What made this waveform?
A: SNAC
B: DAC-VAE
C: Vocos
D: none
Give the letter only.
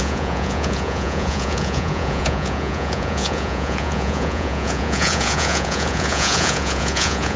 C